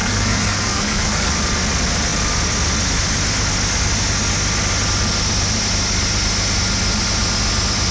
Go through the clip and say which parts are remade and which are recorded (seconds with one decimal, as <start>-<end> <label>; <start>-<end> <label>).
0.0-1.3 remade; 1.3-7.9 recorded